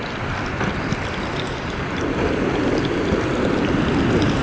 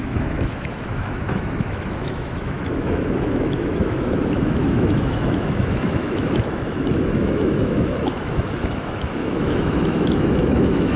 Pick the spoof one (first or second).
second